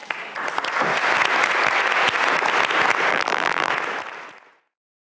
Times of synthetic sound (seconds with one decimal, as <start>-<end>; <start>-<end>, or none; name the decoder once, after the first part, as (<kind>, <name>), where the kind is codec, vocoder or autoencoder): 3.1-3.7 (vocoder, BigVGAN v2)